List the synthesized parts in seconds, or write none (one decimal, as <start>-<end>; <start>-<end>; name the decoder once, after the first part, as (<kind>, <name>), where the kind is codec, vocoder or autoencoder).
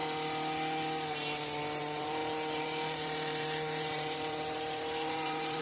1.8-5.6 (vocoder, BigVGAN v2)